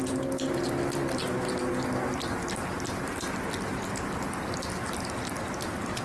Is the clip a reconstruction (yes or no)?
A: no